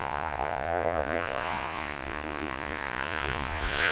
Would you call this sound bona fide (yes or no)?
no